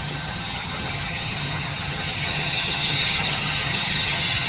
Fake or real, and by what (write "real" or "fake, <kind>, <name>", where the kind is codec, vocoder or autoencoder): fake, vocoder, HiFi-GAN